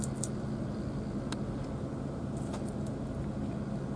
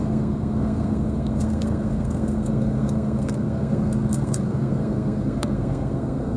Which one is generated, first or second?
second